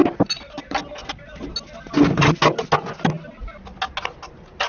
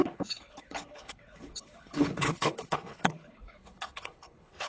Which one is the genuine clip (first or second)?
first